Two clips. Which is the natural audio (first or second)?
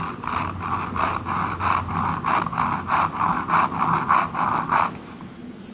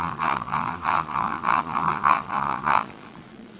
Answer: first